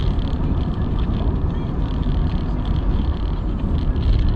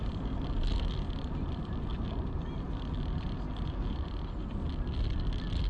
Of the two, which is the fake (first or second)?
first